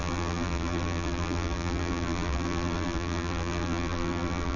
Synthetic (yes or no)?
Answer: yes